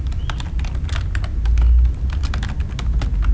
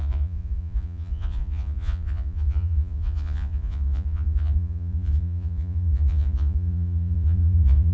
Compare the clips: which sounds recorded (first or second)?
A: first